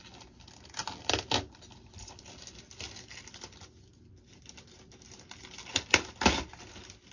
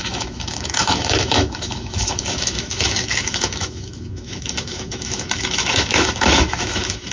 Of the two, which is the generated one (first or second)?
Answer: second